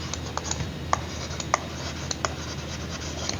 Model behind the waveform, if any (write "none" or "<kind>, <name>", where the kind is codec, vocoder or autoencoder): none